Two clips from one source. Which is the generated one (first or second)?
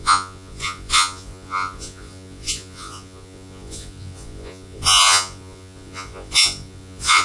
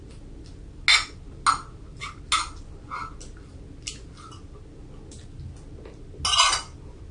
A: first